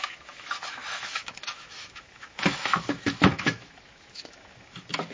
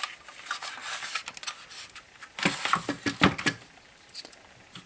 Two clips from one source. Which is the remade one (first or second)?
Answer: first